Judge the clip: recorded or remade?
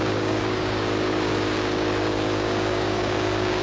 remade